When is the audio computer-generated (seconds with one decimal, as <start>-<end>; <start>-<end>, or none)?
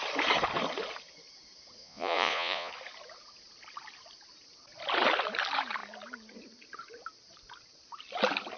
1.8-2.7